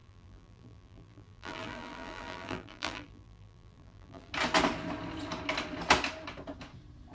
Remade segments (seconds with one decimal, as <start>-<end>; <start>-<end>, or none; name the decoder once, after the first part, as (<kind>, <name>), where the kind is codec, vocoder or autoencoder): 0.0-4.3 (vocoder, BigVGAN v2)